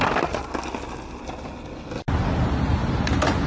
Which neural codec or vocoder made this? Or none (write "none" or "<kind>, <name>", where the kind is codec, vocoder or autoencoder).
none